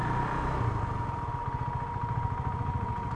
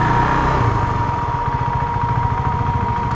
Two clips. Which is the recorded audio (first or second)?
second